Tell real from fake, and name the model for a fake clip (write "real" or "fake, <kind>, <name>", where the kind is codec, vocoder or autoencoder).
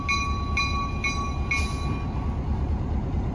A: real